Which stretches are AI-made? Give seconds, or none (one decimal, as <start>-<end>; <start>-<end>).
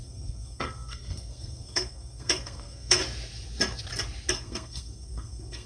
0.0-3.0; 4.3-5.7